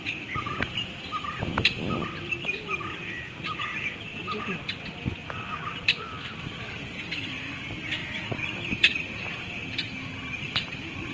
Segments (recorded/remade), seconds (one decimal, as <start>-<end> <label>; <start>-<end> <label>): 0.0-7.1 recorded; 7.1-7.6 remade; 7.6-11.1 recorded